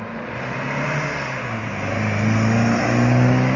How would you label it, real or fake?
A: real